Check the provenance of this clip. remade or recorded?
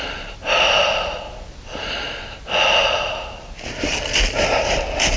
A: recorded